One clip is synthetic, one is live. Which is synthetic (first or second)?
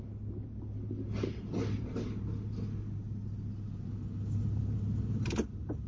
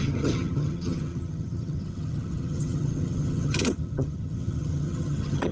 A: second